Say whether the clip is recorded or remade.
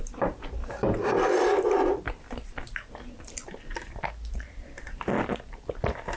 recorded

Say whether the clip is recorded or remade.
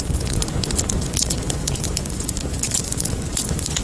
remade